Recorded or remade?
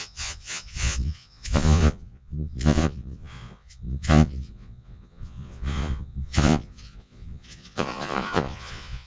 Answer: remade